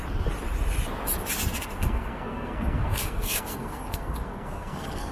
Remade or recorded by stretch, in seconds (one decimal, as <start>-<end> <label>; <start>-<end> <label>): 0.0-1.8 recorded; 1.8-5.1 remade